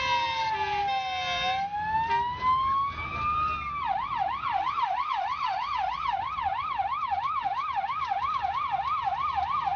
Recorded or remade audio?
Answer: recorded